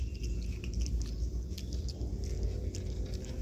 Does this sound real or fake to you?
real